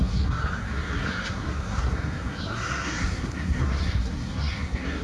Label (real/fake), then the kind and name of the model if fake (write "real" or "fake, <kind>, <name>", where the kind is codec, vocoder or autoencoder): fake, codec, SNAC